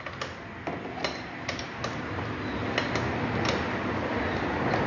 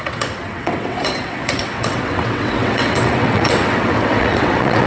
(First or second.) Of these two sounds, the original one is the first